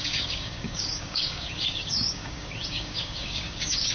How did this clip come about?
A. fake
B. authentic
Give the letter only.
A